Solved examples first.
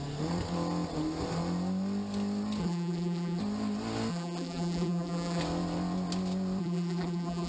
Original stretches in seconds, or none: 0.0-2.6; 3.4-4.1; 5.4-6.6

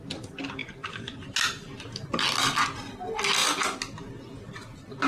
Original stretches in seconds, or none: 0.0-0.6; 1.3-5.1

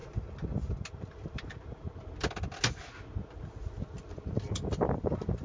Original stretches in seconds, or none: 0.0-5.4

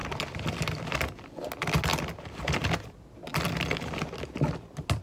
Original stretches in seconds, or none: 0.0-5.0

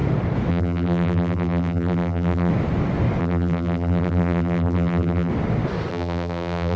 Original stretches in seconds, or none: 0.0-0.5; 2.5-3.2; 5.3-5.9

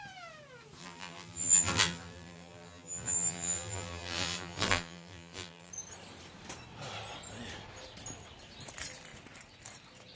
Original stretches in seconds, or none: 0.0-0.8; 5.7-10.2

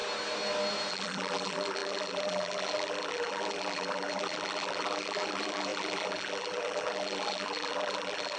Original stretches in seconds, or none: 0.0-0.9